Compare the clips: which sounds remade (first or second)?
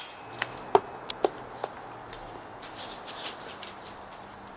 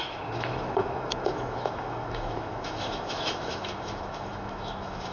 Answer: second